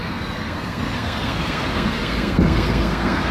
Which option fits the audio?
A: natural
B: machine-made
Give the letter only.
B